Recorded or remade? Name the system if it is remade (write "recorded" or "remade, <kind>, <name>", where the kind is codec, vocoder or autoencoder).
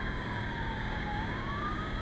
remade, codec, DAC